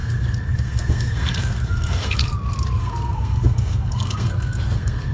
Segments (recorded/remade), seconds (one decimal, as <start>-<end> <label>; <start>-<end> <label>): 0.0-2.2 remade; 2.2-2.8 recorded; 2.8-5.1 remade